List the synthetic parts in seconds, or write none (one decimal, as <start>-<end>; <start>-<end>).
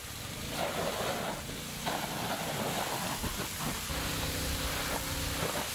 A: 3.9-4.7